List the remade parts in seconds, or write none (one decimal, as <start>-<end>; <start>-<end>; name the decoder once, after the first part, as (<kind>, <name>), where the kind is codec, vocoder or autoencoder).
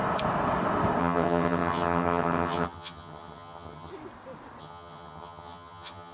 1.0-3.9 (vocoder, HiFi-GAN); 4.6-6.1